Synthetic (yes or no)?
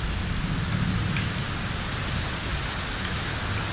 no